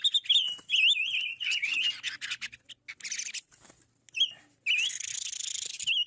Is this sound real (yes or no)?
yes